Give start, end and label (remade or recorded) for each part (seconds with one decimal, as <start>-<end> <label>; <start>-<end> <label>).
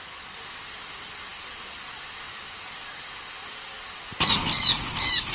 0.0-5.3 recorded